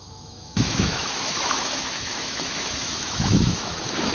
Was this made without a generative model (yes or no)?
no